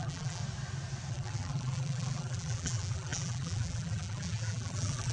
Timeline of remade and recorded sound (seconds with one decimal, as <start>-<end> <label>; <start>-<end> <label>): 0.0-0.4 remade; 0.4-1.1 recorded; 1.1-5.1 remade